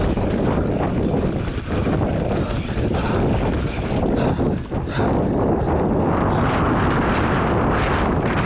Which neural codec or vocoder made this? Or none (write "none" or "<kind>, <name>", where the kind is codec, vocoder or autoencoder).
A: none